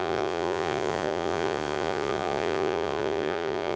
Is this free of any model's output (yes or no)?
no